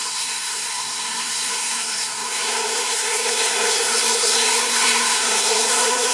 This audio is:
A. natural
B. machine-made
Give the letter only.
B